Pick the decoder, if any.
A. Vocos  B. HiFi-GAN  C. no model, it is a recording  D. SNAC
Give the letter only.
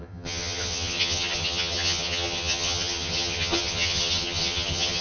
B